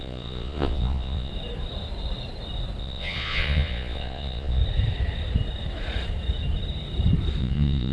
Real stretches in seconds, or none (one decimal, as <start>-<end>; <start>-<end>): 1.3-2.8; 4.6-7.4